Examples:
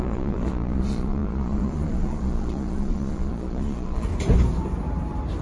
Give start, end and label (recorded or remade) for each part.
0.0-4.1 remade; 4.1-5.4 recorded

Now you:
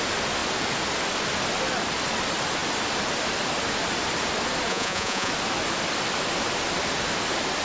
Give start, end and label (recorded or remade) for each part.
0.0-4.7 recorded; 4.7-5.3 remade; 5.3-7.6 recorded

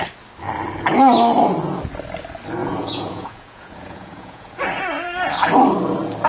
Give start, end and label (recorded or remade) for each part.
0.0-2.6 recorded; 2.6-4.6 remade; 4.6-6.3 recorded

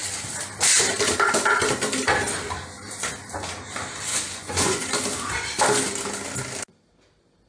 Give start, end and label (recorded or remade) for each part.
0.0-4.1 recorded; 4.1-4.9 remade; 4.9-7.5 recorded

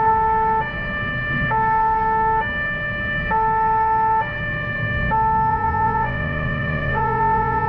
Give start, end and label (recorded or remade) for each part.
0.0-5.5 recorded; 5.5-7.7 remade

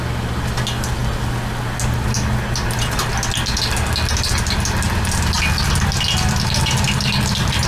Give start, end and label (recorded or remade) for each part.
0.0-7.7 recorded

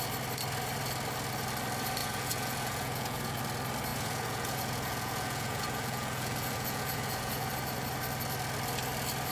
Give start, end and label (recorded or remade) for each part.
0.0-2.0 recorded; 2.0-3.4 remade; 3.4-3.9 recorded; 3.9-7.5 remade; 7.5-9.3 recorded

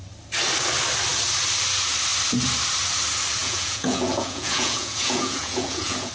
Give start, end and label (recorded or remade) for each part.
0.0-3.4 recorded; 3.4-6.1 remade